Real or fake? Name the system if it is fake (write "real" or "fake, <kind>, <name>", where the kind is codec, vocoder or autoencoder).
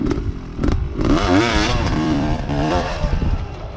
fake, vocoder, BigVGAN v2